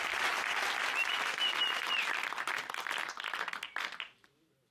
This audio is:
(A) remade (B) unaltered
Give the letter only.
B